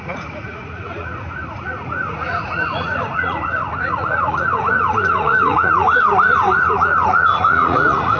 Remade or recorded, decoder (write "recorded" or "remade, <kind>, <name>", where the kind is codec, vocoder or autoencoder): remade, vocoder, Vocos